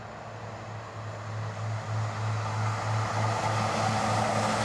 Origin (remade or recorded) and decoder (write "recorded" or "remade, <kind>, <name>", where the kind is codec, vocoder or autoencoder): recorded